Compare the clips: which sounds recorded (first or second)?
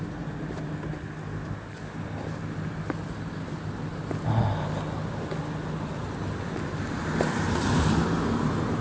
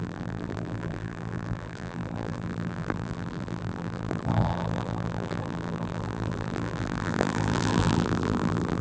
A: first